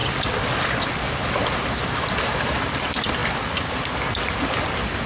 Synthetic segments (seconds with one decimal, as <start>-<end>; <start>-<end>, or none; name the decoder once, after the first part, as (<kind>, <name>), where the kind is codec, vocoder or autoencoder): 0.0-0.8 (vocoder, BigVGAN v2); 3.2-4.6